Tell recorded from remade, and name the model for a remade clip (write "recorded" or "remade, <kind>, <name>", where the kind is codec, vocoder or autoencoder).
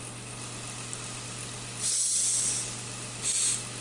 recorded